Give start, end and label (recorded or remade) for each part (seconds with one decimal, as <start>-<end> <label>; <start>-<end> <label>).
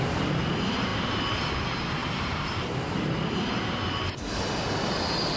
0.0-2.0 recorded; 2.0-3.2 remade; 3.2-5.4 recorded